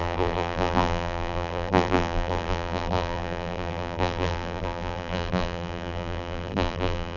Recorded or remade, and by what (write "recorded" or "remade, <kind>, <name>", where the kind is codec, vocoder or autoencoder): remade, vocoder, BigVGAN v2